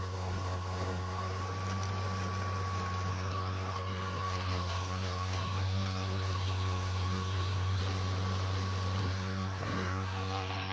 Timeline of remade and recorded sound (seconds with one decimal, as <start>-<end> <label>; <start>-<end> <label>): 0.0-1.4 remade; 1.4-3.1 recorded; 3.1-7.8 remade; 7.8-9.0 recorded; 9.0-10.7 remade